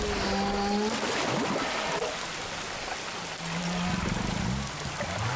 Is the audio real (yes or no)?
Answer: yes